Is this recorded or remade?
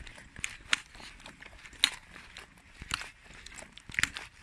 recorded